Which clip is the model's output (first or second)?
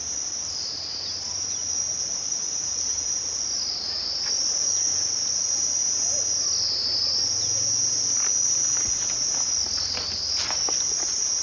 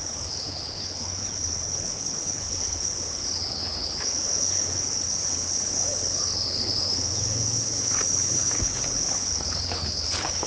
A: second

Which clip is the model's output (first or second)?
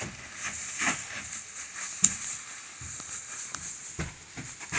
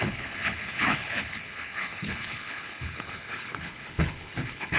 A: second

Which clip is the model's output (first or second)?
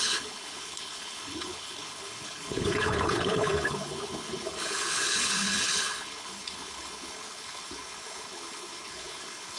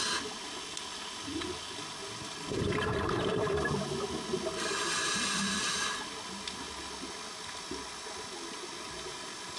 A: first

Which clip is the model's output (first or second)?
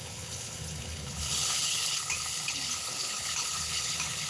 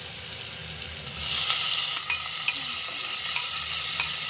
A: first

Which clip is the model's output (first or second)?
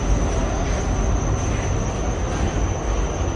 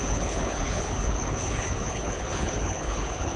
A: second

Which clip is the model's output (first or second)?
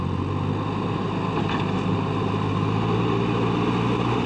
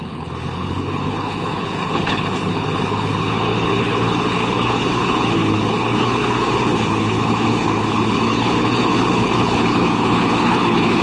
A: second